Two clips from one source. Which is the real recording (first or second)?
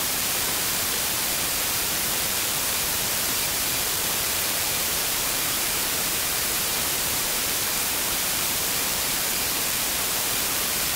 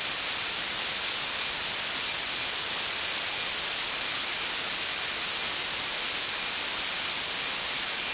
second